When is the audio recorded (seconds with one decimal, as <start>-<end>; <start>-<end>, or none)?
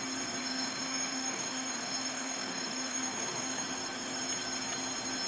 0.0-0.4; 3.6-5.3